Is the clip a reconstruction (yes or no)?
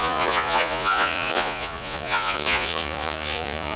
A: yes